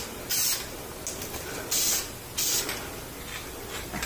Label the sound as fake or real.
real